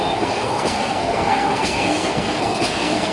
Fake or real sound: fake